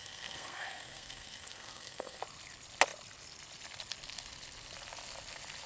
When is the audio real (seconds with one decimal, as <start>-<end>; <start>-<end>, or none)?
2.2-5.7